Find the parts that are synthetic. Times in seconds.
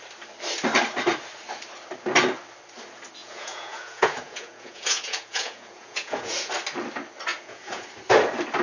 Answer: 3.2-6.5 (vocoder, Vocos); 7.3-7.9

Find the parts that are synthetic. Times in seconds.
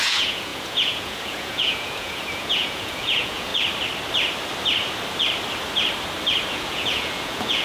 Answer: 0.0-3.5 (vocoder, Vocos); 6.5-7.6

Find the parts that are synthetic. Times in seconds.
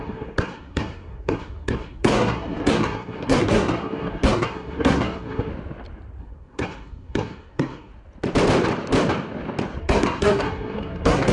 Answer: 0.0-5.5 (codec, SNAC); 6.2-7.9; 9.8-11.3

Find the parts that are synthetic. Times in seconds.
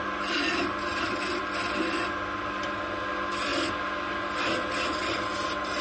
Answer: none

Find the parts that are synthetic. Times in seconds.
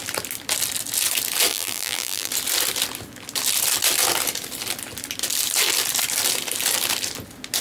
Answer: 1.5-2.3 (vocoder, BigVGAN v2)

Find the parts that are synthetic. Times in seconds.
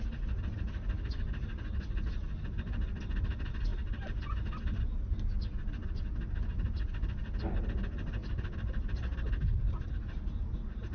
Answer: none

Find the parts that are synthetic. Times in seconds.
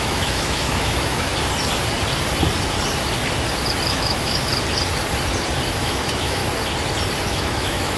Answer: 0.0-1.3 (autoencoder, DAC-VAE); 3.9-4.5; 5.8-6.4; 7.3-8.0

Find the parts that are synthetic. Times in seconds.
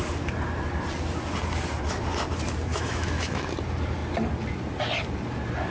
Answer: 2.7-3.5 (autoencoder, DAC-VAE)